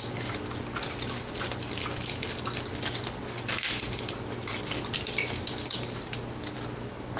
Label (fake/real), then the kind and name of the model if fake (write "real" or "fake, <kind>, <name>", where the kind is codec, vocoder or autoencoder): real